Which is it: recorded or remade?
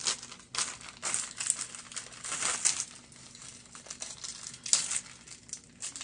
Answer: recorded